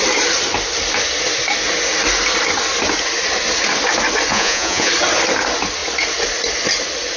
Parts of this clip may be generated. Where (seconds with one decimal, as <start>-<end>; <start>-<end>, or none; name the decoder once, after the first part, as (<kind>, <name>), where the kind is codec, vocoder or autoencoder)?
4.3-4.9 (vocoder, Vocos)